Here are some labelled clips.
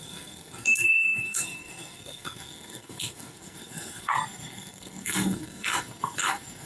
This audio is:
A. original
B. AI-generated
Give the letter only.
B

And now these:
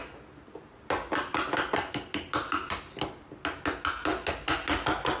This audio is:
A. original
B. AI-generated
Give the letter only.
A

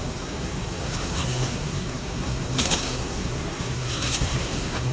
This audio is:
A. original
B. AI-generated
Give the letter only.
B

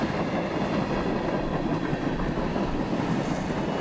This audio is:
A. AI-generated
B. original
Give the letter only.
B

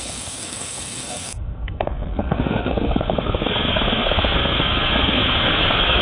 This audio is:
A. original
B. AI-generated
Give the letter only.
B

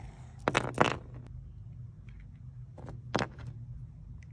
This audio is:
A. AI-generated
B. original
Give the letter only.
B